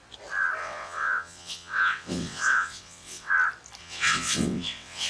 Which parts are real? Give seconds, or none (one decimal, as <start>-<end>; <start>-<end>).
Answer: 0.0-0.6; 3.3-3.8